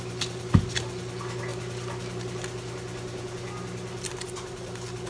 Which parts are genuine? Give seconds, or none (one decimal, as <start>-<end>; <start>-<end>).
0.0-5.1